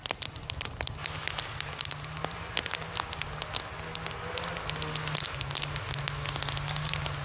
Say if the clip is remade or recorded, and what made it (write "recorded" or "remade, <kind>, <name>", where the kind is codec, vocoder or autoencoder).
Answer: recorded